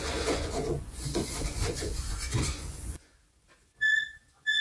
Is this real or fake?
fake